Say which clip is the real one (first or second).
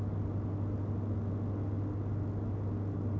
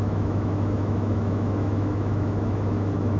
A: first